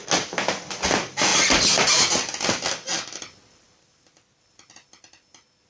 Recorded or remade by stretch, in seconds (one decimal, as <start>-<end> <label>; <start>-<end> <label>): 0.0-5.7 recorded